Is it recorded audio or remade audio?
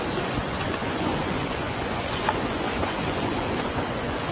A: remade